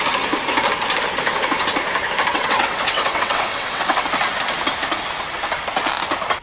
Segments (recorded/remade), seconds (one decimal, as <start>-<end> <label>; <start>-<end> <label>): 0.0-2.3 recorded; 2.3-4.1 remade; 4.1-6.4 recorded